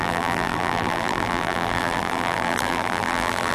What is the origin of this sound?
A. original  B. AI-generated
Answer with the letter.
B